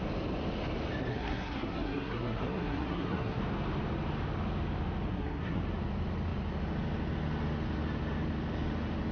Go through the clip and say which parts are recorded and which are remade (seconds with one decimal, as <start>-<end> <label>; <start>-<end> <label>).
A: 0.0-1.1 recorded; 1.1-3.4 remade; 3.4-5.1 recorded; 5.1-5.6 remade; 5.6-9.1 recorded